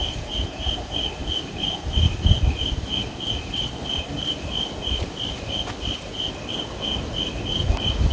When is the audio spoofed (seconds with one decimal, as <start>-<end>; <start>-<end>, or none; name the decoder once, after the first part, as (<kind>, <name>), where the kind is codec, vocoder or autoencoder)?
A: none